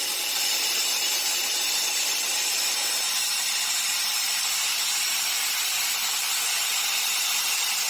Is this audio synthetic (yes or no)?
no